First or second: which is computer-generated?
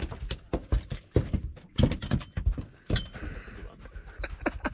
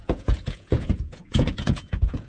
second